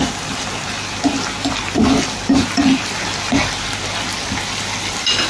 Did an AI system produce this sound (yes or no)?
no